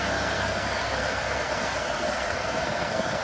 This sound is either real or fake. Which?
fake